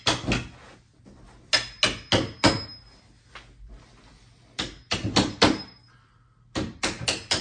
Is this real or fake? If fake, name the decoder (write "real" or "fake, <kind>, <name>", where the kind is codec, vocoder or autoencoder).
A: real